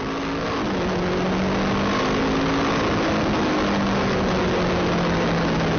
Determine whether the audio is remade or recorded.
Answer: recorded